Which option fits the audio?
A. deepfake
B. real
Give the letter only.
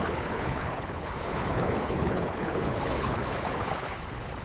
A